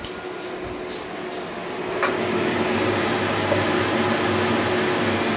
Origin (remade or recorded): recorded